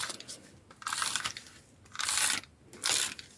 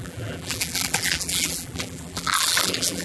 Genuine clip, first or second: first